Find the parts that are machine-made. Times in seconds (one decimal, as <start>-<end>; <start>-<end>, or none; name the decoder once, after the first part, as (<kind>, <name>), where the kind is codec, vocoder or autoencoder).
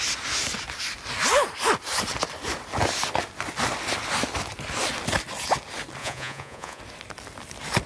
6.0-6.8 (vocoder, Vocos)